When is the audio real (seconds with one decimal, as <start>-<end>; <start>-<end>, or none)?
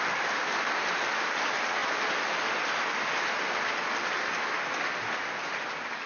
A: 0.0-6.1